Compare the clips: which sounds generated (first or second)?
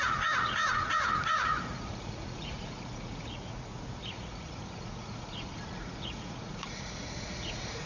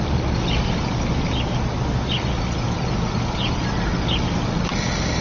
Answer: first